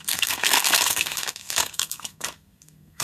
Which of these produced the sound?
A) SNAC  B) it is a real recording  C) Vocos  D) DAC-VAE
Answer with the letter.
A